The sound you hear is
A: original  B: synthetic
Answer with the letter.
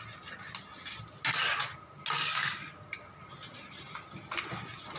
A